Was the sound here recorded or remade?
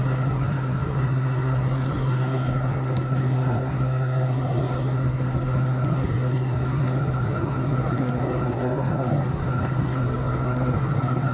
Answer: remade